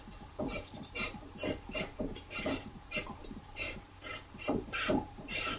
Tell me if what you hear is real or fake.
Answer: fake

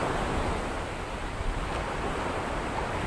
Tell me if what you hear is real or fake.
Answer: real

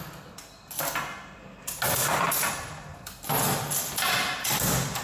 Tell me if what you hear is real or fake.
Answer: real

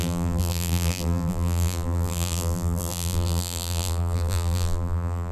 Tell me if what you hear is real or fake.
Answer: fake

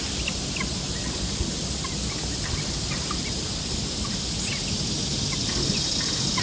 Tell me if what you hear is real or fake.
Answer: real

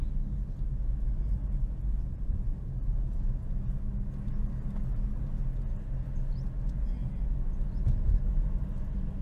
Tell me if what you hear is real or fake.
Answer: real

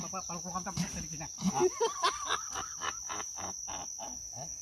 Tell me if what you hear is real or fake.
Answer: real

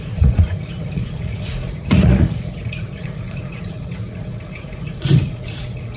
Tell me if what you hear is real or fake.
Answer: fake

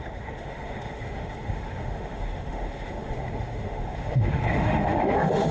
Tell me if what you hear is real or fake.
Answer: fake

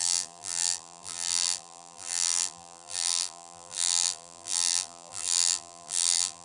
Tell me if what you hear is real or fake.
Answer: fake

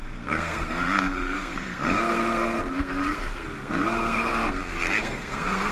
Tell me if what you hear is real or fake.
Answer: fake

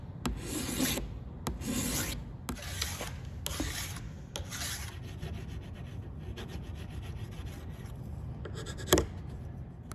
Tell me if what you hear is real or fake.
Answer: real